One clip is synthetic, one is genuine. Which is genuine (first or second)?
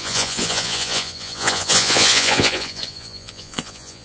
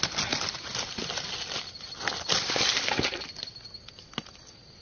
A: second